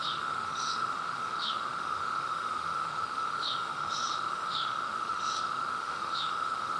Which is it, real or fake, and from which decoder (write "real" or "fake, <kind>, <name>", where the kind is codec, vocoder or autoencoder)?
fake, autoencoder, DAC-VAE